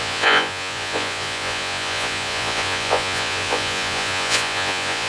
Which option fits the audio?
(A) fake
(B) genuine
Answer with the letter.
A